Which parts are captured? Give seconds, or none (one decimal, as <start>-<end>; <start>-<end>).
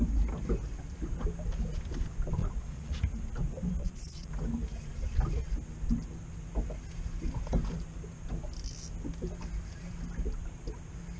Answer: 0.0-2.4; 3.0-3.8; 4.3-11.2